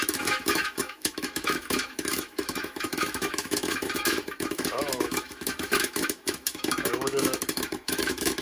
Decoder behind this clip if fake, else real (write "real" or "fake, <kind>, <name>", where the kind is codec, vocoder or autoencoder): fake, autoencoder, DAC-VAE